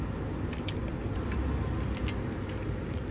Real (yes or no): yes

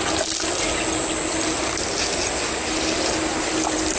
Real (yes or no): yes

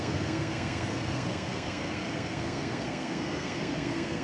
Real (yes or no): no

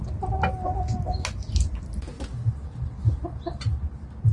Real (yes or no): yes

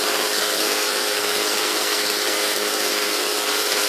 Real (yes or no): no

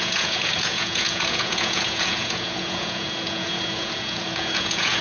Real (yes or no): no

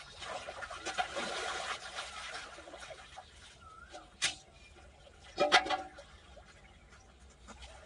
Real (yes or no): yes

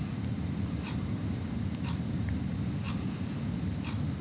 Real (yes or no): yes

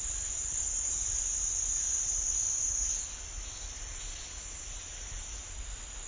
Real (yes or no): yes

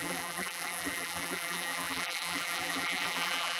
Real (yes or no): no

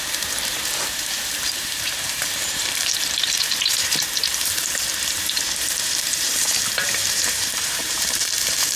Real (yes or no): no